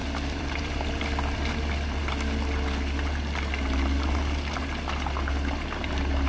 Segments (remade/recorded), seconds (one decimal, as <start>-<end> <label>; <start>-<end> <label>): 0.0-2.0 remade; 2.0-5.8 recorded; 5.8-6.3 remade